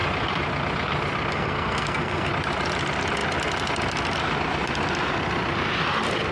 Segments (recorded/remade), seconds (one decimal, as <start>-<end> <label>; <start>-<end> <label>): 0.0-1.3 recorded; 1.3-2.3 remade; 2.3-6.3 recorded